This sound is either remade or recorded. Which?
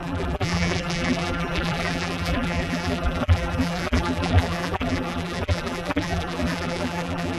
remade